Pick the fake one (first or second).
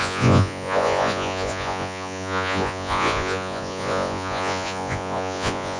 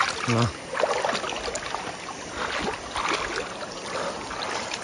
first